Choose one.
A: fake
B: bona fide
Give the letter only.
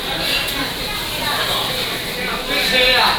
B